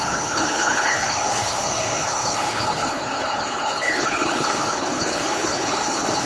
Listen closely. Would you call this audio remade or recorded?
remade